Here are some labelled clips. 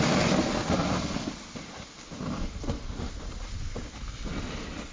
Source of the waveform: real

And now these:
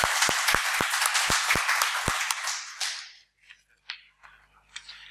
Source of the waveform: real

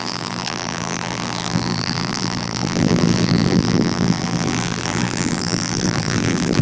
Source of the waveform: fake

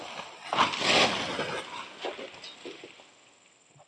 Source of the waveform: real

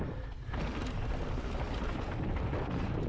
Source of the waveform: real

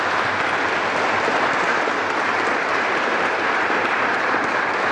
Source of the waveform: real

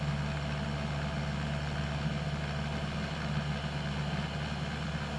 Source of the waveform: real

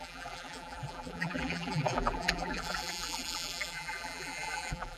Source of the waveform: fake